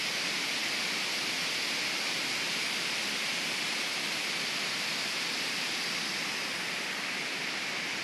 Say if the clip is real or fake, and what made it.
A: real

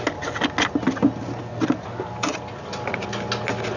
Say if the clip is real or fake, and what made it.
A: real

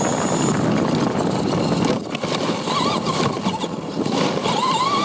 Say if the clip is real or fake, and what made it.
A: real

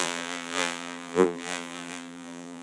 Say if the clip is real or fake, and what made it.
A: fake, vocoder, BigVGAN v2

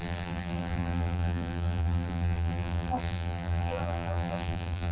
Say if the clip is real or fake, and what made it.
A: fake, vocoder, BigVGAN v2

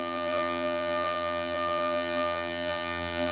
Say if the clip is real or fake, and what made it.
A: fake, vocoder, BigVGAN v2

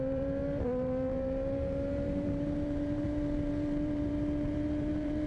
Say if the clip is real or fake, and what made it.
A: fake, vocoder, BigVGAN v2